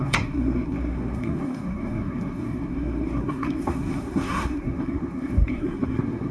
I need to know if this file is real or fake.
fake